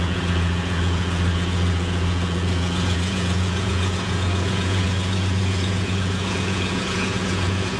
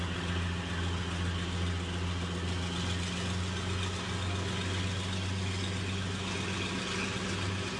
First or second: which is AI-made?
first